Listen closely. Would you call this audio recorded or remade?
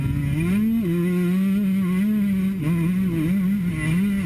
recorded